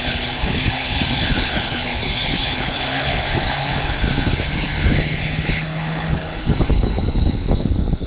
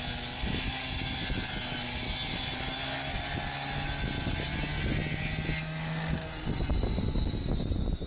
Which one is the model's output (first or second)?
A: first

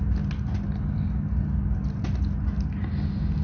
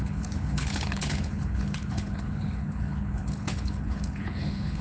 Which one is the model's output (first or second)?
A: second